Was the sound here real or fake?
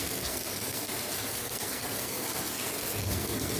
fake